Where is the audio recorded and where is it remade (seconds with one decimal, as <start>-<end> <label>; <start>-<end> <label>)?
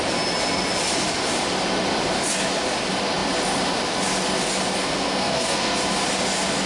0.0-4.8 recorded; 4.8-5.8 remade; 5.8-6.7 recorded